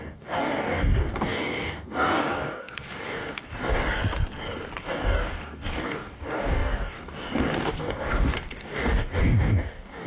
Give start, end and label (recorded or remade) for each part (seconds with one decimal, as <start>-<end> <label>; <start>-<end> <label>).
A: 0.0-3.8 remade; 3.8-4.8 recorded; 4.8-10.1 remade